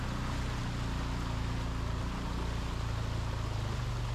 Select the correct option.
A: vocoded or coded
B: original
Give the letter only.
B